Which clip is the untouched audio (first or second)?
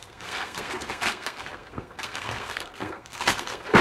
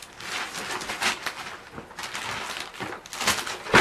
second